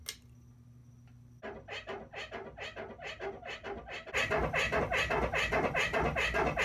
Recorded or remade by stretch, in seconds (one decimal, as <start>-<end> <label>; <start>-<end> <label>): 0.0-6.6 recorded